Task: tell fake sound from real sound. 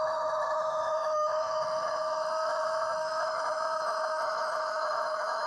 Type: fake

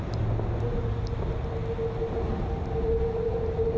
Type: real